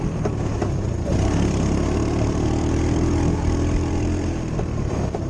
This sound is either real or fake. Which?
fake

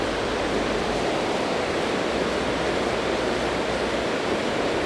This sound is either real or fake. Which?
fake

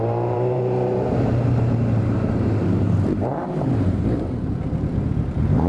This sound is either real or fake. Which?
fake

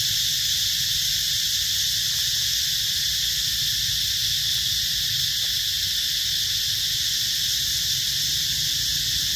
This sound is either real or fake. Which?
real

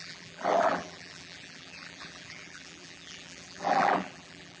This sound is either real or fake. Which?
fake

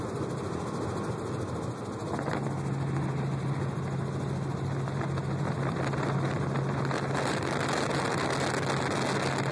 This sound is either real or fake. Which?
real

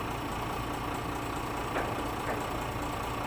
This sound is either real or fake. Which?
real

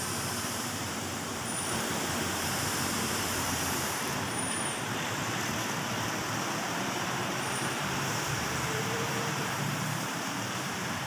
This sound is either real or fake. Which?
fake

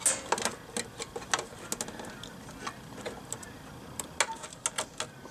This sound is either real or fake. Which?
real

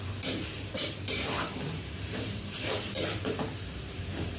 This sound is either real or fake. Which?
fake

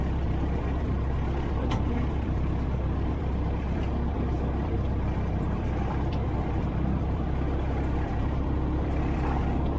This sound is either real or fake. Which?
fake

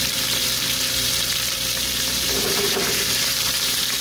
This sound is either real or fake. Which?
fake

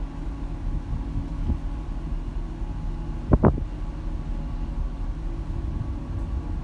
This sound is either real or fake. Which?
real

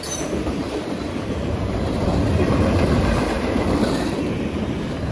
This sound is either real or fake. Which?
fake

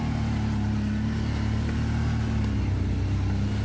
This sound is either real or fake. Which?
real